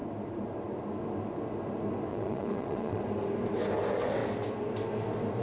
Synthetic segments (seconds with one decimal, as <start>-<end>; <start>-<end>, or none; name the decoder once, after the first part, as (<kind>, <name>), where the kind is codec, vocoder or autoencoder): 2.1-3.0 (vocoder, Vocos)